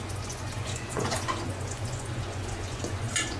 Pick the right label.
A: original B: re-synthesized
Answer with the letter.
B